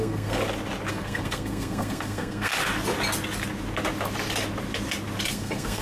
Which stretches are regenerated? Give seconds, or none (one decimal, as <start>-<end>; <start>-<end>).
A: 0.0-0.4; 0.9-2.5; 5.3-5.8